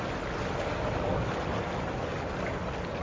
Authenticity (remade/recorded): recorded